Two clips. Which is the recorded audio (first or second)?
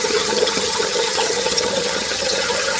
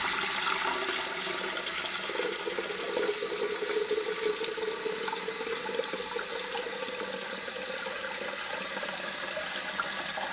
second